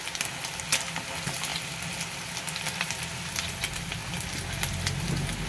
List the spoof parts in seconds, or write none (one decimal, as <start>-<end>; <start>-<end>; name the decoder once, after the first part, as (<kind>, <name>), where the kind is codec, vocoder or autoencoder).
none